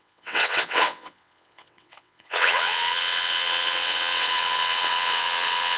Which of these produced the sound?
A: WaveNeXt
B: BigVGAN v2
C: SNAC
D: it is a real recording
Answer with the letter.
A